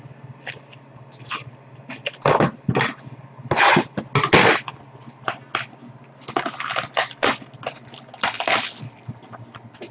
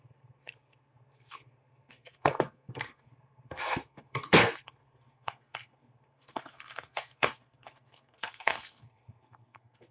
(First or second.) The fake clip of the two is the second